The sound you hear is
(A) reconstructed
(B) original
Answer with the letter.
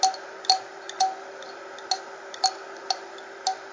B